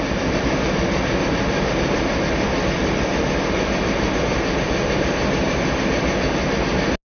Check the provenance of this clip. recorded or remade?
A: recorded